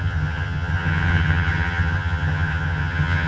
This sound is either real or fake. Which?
fake